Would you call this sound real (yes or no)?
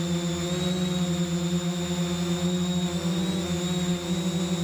yes